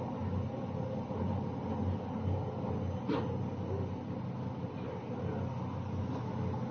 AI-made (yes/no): no